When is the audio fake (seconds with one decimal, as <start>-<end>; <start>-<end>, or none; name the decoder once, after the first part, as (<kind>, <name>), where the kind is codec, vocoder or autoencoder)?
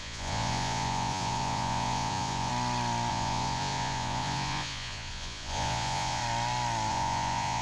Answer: 0.0-2.5 (vocoder, Vocos); 3.1-6.2; 6.9-7.6